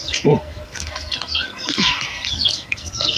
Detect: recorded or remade remade